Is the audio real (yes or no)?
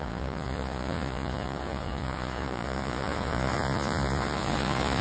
no